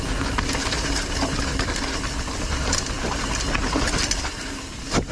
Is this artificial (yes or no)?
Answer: no